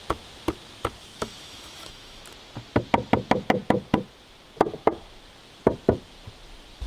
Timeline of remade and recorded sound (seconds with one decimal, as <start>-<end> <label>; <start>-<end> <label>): 0.0-1.0 recorded; 1.0-2.2 remade; 2.2-6.9 recorded